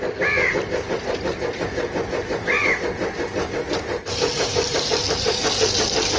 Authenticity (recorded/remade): recorded